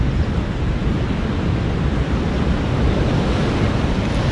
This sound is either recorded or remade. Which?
recorded